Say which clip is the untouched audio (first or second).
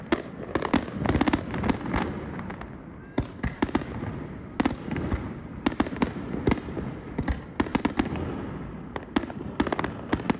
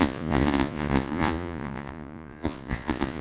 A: first